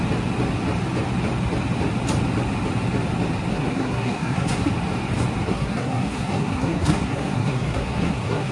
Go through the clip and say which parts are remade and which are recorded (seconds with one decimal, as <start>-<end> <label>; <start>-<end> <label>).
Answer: 0.0-3.5 recorded; 3.5-4.7 remade; 4.7-5.5 recorded; 5.5-8.5 remade